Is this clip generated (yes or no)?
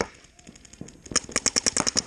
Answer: no